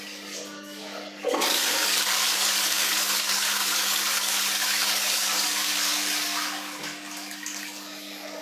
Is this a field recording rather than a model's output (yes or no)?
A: no